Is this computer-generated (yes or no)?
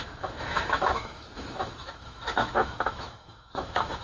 yes